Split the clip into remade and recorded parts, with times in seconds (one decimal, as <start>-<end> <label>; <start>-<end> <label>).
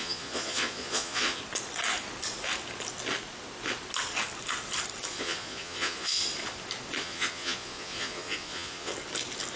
0.0-1.4 remade; 1.4-5.1 recorded; 5.1-6.2 remade; 6.2-7.0 recorded; 7.0-8.9 remade; 8.9-9.6 recorded